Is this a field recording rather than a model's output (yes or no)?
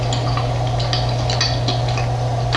yes